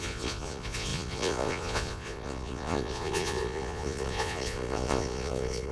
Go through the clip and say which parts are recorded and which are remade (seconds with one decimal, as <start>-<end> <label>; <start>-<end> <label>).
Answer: 0.0-5.7 remade